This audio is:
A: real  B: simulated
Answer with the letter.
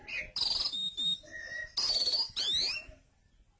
A